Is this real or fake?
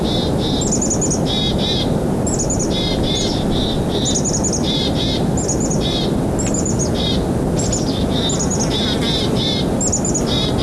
real